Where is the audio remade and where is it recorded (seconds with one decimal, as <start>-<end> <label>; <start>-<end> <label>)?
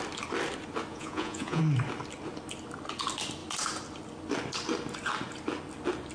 0.0-0.9 recorded; 0.9-1.6 remade; 1.6-6.1 recorded